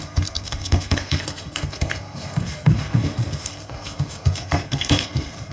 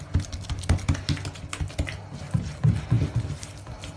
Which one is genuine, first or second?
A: second